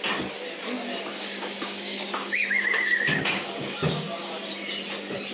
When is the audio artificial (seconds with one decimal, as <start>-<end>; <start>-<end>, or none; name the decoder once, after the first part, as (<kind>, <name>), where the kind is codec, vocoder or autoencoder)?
1.1-4.3 (codec, DAC)